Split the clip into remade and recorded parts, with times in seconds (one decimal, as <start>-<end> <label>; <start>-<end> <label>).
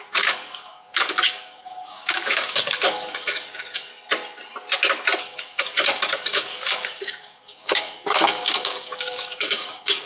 0.0-3.9 remade; 3.9-5.2 recorded; 5.2-10.1 remade